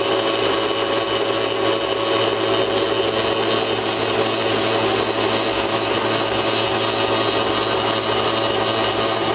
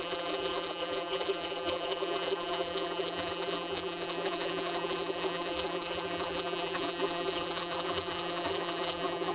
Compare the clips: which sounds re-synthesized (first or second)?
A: second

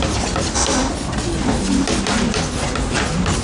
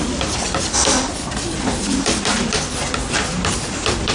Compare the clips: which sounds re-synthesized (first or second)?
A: second